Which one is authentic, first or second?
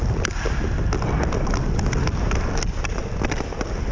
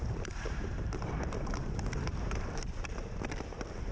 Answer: first